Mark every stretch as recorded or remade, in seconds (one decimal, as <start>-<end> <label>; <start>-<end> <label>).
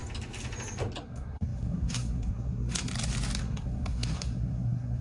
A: 0.0-1.0 recorded; 1.0-2.9 remade; 2.9-3.4 recorded; 3.4-5.0 remade